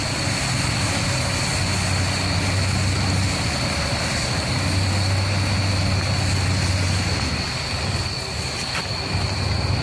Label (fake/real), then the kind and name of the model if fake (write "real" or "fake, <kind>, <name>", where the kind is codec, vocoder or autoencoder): real